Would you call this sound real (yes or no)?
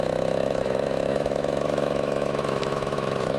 no